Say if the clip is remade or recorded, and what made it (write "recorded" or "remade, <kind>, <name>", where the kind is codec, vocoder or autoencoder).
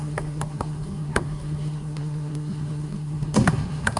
remade, codec, SNAC